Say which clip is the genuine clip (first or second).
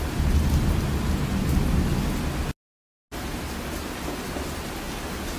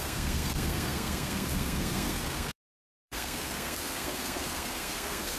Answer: first